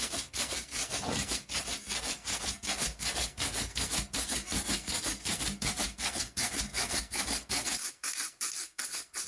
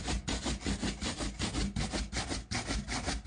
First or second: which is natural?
second